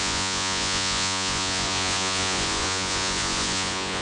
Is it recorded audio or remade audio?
remade